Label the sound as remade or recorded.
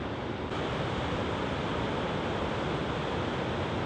recorded